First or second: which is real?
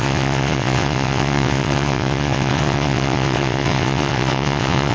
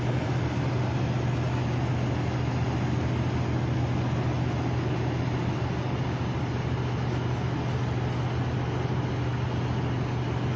second